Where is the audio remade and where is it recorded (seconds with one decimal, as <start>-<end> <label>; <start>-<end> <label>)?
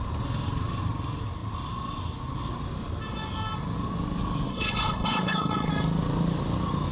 0.0-4.5 recorded; 4.5-5.7 remade; 5.7-6.9 recorded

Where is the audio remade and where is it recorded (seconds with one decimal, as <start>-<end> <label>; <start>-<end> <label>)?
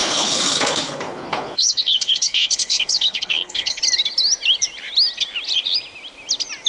0.0-3.8 remade; 3.8-6.7 recorded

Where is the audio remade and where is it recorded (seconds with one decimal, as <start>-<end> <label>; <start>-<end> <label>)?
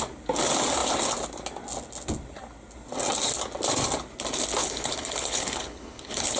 0.0-4.6 recorded; 4.6-6.4 remade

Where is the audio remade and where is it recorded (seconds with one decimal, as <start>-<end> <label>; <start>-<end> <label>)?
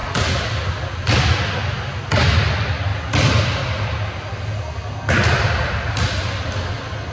0.0-7.1 recorded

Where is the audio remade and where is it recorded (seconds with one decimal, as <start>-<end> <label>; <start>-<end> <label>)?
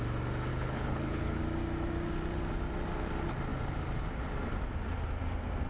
0.0-0.5 recorded; 0.5-1.4 remade; 1.4-5.7 recorded